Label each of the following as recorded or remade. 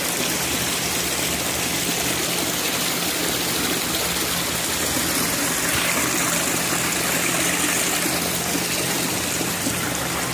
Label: recorded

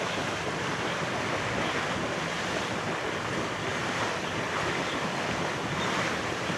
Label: recorded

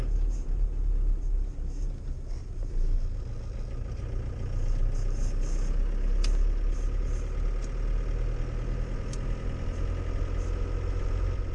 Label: recorded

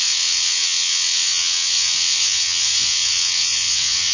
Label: remade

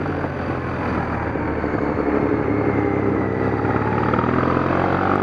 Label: recorded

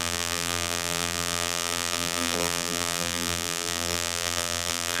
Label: remade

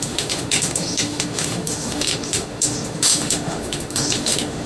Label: remade